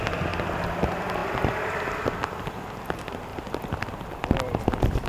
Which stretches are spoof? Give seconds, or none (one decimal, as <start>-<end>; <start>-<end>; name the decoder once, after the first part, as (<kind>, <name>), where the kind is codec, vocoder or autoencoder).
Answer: 0.0-3.3 (vocoder, BigVGAN v2); 3.9-5.1